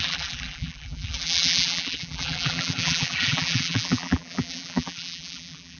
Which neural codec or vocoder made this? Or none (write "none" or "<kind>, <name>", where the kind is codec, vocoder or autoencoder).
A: vocoder, BigVGAN v2